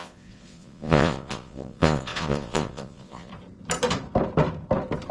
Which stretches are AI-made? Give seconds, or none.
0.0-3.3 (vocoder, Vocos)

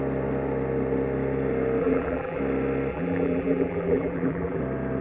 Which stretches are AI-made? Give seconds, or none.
1.8-2.4 (vocoder, BigVGAN v2); 2.9-4.6

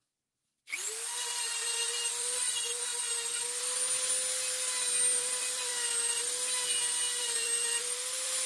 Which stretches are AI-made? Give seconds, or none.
0.0-2.9 (vocoder, BigVGAN v2); 5.0-5.7; 7.2-8.5

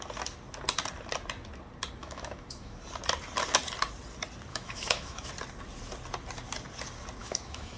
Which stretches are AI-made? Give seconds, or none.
2.0-2.8 (autoencoder, DAC-VAE); 4.5-5.3; 7.2-7.8

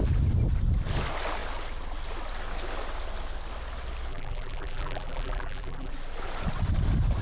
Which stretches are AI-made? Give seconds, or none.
4.1-5.9 (vocoder, BigVGAN v2)

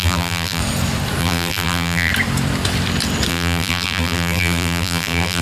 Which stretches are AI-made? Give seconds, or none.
0.0-0.6 (vocoder, BigVGAN v2); 1.2-2.1; 3.3-5.4